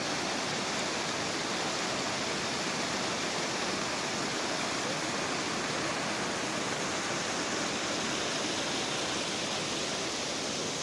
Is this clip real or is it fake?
real